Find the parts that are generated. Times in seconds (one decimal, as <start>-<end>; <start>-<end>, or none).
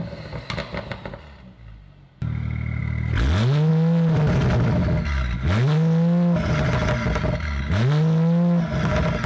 none